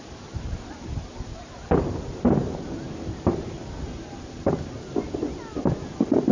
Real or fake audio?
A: real